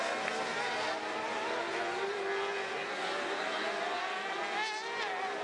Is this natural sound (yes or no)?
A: yes